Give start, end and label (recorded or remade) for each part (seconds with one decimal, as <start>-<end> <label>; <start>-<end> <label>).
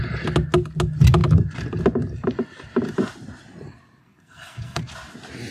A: 0.0-4.0 recorded; 4.0-4.8 remade; 4.8-5.5 recorded